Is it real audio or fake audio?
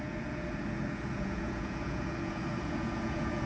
fake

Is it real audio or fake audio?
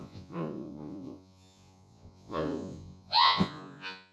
fake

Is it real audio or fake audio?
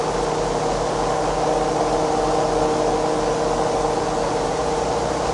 real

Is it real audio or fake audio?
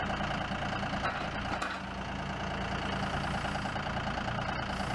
real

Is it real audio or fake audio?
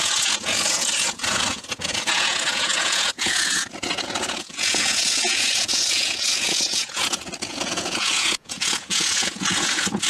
fake